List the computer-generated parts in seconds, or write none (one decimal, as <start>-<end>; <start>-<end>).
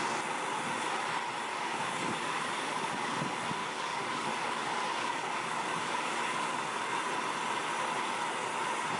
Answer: 1.5-3.2; 3.6-7.0